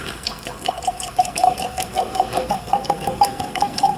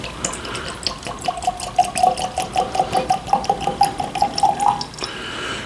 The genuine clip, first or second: second